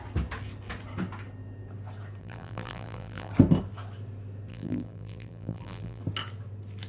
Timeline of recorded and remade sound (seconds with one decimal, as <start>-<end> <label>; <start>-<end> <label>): 0.0-2.2 recorded; 2.2-3.3 remade; 3.3-4.5 recorded; 4.5-6.0 remade; 6.0-6.9 recorded